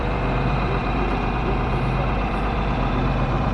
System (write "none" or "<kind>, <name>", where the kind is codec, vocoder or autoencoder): vocoder, BigVGAN v2